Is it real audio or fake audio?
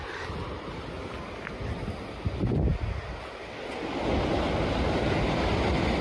real